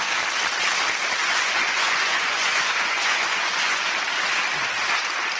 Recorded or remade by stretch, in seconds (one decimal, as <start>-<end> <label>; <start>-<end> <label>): 0.0-1.2 recorded; 1.2-3.9 remade; 3.9-5.4 recorded